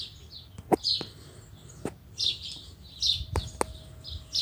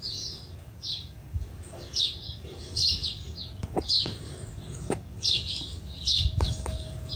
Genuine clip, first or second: first